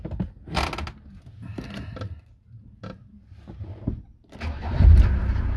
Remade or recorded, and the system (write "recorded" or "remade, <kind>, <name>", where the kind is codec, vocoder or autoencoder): recorded